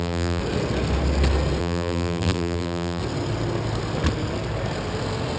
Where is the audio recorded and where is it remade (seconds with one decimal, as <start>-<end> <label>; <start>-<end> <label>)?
0.0-0.4 remade; 0.4-1.6 recorded; 1.6-3.0 remade; 3.0-5.4 recorded